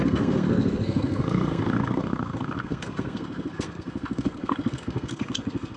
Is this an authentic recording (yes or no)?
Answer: no